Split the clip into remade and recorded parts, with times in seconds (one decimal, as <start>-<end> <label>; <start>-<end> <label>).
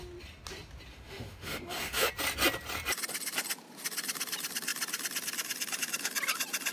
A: 0.0-0.9 recorded; 0.9-2.1 remade; 2.1-6.7 recorded